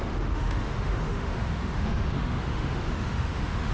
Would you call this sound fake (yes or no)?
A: yes